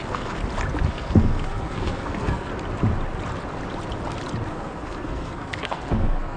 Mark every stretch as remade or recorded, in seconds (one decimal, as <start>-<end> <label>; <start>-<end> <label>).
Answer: 0.0-0.4 remade; 0.4-0.9 recorded; 0.9-2.5 remade; 2.5-4.5 recorded; 4.5-6.4 remade